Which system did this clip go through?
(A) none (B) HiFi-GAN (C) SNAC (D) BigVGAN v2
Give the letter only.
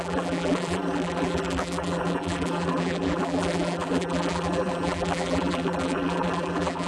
D